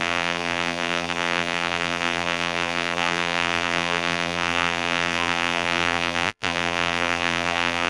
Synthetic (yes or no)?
yes